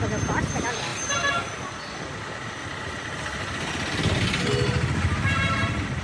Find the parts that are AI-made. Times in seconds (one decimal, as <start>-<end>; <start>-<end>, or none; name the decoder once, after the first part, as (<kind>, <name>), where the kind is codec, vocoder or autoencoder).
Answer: none